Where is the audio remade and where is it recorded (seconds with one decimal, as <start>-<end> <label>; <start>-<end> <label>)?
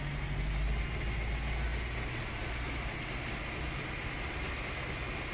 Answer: 0.0-5.3 recorded